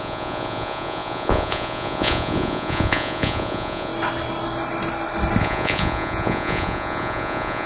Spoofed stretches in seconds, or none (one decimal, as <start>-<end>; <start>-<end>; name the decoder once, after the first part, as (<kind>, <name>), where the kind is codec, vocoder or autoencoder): 0.0-3.9 (vocoder, Vocos); 5.4-7.7